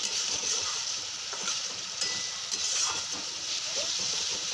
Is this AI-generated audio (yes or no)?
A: yes